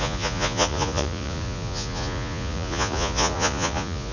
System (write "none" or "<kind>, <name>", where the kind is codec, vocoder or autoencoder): vocoder, Vocos